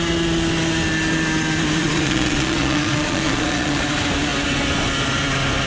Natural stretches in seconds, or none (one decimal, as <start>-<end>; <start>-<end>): 0.0-1.8; 3.8-5.7